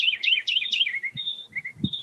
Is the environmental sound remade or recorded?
remade